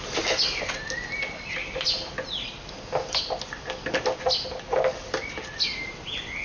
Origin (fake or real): real